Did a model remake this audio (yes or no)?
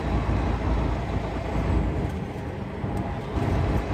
no